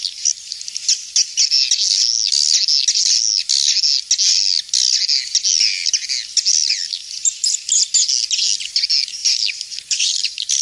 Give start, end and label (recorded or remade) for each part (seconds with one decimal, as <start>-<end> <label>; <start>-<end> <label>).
0.0-6.6 recorded; 6.6-7.5 remade; 7.5-9.2 recorded; 9.2-10.6 remade